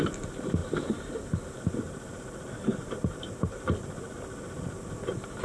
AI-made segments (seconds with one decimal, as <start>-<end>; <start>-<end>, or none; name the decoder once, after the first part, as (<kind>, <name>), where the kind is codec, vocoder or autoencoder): none